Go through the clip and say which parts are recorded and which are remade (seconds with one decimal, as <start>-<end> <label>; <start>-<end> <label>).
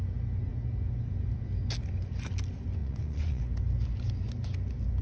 0.0-2.8 recorded; 2.8-3.4 remade; 3.4-5.0 recorded